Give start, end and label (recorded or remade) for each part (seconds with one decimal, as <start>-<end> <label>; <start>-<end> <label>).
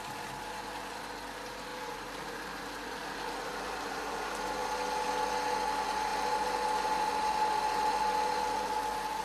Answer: 0.0-1.7 recorded; 1.7-4.6 remade; 4.6-9.2 recorded